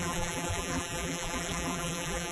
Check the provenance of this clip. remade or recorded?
remade